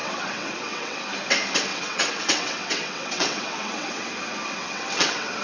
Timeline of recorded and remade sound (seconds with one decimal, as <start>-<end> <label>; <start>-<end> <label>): 0.0-1.0 remade; 1.0-1.7 recorded; 1.7-4.1 remade; 4.1-4.6 recorded; 4.6-5.4 remade